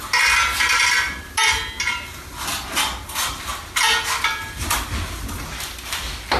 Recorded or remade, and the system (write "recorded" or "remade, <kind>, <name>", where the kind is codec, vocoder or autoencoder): recorded